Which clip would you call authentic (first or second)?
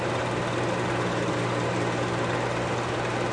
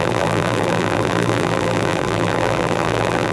first